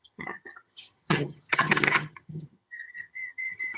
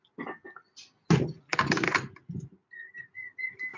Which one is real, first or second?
second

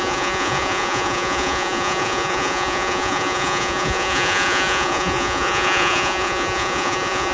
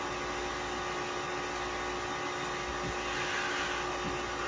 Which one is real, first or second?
second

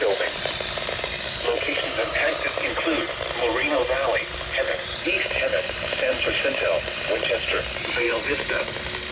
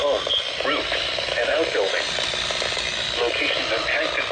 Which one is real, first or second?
second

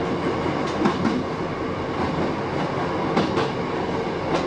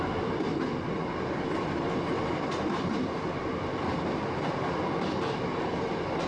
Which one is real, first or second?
first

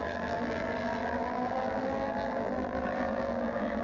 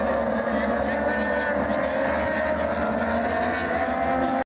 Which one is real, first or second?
second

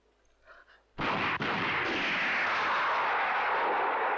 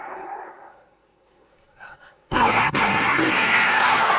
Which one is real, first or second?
first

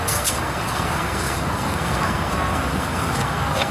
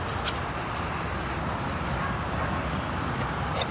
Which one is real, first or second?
second